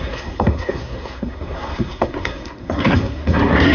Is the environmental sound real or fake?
fake